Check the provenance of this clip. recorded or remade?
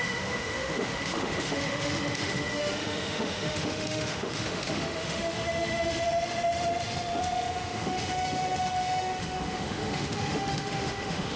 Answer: remade